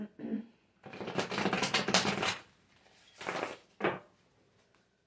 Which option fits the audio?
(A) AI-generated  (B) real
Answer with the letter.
B